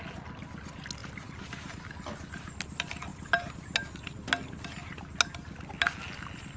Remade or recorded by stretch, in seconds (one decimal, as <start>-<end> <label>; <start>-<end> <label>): 0.0-1.0 recorded; 1.0-1.9 remade; 1.9-6.6 recorded